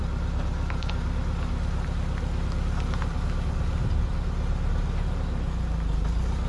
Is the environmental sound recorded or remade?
recorded